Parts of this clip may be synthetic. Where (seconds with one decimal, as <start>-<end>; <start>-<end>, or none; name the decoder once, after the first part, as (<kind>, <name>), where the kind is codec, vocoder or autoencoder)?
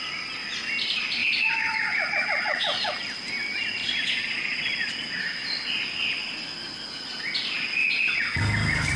1.2-2.9 (vocoder, Vocos); 3.8-5.2; 7.8-8.4